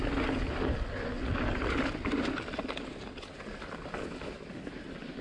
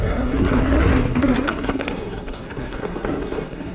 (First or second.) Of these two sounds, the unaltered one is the first